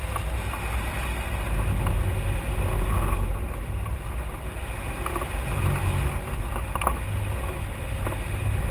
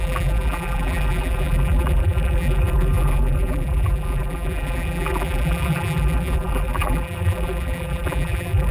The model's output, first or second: second